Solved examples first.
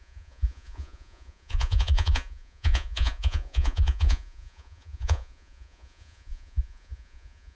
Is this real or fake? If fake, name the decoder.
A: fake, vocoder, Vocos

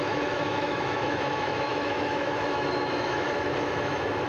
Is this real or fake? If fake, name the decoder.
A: fake, autoencoder, DAC-VAE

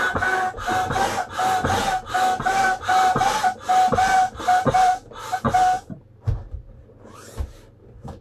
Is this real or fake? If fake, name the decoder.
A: real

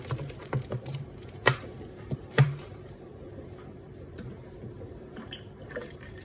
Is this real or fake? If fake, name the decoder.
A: fake, vocoder, BigVGAN v2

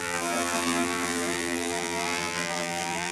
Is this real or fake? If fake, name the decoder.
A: fake, vocoder, BigVGAN v2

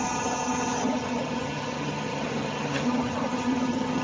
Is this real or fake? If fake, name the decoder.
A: fake, vocoder, HiFi-GAN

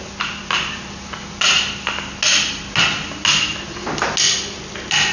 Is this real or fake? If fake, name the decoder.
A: real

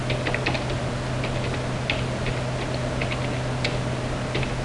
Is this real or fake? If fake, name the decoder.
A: real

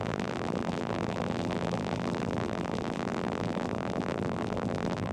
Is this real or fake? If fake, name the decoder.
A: fake, vocoder, BigVGAN v2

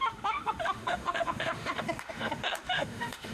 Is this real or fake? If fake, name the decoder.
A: fake, autoencoder, DAC-VAE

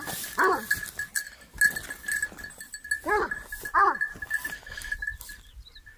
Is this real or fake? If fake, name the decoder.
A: real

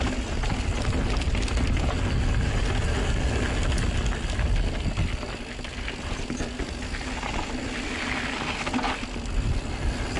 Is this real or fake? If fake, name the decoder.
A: real